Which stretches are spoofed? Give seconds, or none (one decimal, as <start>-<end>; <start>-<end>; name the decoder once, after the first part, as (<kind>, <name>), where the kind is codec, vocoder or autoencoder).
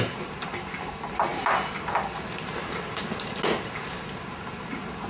none